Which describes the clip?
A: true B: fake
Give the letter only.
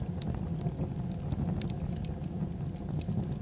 A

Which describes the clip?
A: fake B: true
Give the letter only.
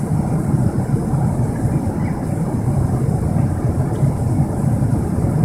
B